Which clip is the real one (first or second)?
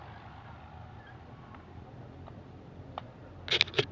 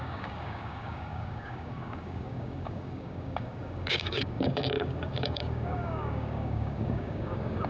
first